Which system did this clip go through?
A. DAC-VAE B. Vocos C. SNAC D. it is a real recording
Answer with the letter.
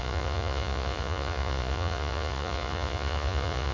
B